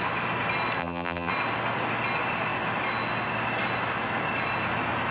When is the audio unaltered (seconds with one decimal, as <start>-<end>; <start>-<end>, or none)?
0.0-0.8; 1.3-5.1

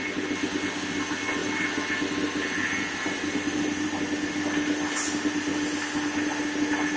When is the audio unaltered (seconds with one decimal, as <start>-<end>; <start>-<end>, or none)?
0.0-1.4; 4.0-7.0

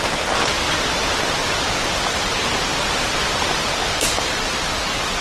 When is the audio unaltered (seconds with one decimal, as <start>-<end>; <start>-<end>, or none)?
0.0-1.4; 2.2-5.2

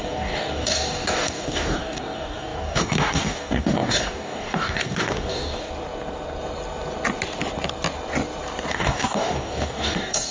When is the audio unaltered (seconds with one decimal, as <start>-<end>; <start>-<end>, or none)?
5.7-8.7

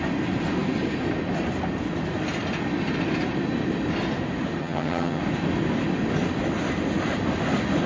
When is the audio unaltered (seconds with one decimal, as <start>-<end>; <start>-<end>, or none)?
0.0-4.6; 5.2-7.9

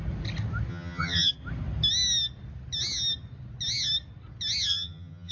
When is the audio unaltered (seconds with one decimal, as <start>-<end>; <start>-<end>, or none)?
0.0-0.7; 1.3-4.7

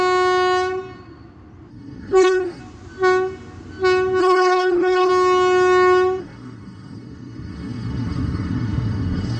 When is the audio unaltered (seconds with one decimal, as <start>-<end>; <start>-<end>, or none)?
0.0-1.7; 2.6-4.2; 5.1-6.2